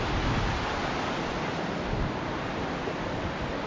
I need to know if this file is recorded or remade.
recorded